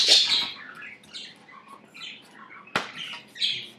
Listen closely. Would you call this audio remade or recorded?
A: recorded